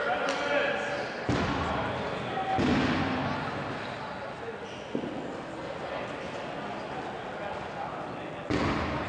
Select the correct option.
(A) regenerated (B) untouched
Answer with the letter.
B